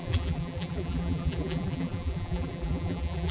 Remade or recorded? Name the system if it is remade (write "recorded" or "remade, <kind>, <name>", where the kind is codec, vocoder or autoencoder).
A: remade, vocoder, BigVGAN v2